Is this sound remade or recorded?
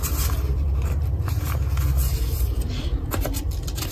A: remade